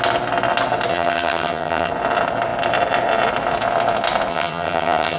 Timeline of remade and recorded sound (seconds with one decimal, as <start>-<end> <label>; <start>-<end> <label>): 0.0-0.9 recorded; 0.9-1.9 remade; 1.9-4.3 recorded; 4.3-5.2 remade